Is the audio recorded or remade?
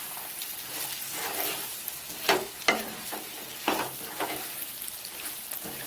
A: recorded